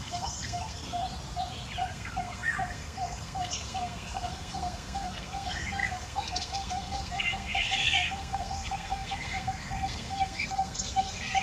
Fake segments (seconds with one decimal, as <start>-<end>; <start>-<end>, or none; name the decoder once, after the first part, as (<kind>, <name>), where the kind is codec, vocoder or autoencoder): 0.0-1.0 (codec, SNAC); 1.9-11.4